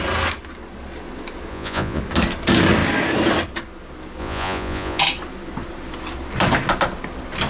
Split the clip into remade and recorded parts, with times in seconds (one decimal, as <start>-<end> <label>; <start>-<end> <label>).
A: 0.0-1.5 recorded; 1.5-2.0 remade; 2.0-4.2 recorded; 4.2-5.0 remade; 5.0-7.5 recorded